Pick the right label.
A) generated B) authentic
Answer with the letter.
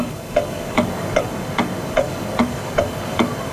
A